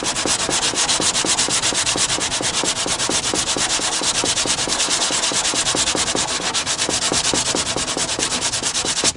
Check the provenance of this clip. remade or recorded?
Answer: recorded